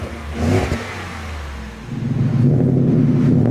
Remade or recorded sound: recorded